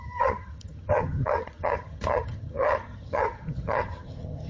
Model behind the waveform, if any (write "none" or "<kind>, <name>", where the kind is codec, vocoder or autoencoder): vocoder, HiFi-GAN